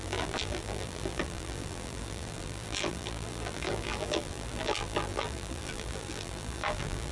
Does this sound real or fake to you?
fake